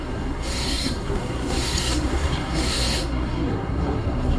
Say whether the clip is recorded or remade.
remade